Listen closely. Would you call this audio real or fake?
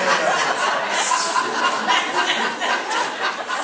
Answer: real